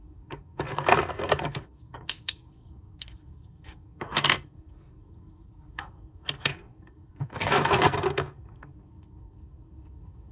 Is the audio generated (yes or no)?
yes